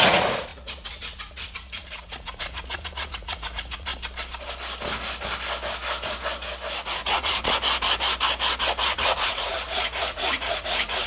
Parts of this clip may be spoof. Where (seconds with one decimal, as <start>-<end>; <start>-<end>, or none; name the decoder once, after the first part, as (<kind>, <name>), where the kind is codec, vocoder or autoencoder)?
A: 0.0-3.9 (vocoder, Vocos); 6.8-7.4; 8.8-11.1